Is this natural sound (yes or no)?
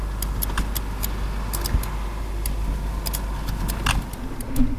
yes